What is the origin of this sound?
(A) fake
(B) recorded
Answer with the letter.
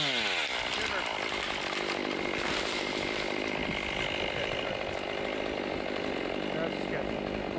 B